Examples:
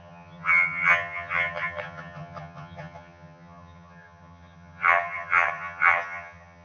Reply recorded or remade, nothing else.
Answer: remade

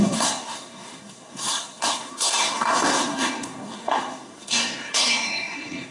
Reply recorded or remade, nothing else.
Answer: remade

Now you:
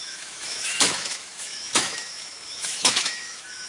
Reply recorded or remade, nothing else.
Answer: remade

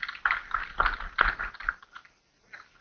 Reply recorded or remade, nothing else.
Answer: recorded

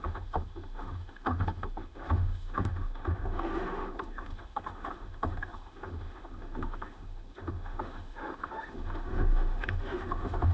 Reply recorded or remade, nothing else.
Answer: remade